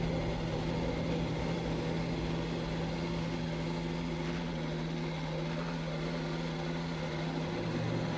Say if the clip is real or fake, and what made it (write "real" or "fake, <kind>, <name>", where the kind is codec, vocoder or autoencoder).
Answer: real